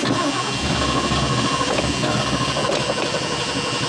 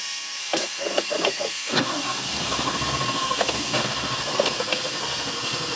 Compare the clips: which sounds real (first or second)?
first